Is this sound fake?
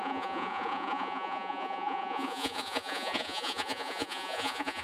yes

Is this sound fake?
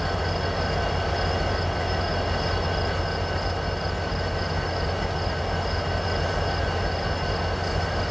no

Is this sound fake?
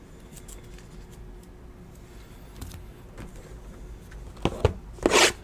no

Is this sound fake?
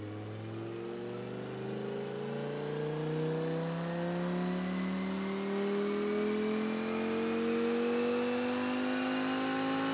no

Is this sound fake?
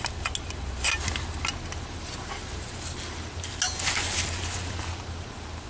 no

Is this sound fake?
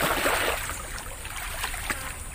no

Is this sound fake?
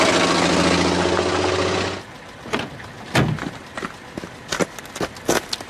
no